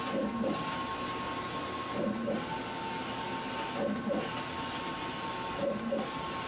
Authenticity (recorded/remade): recorded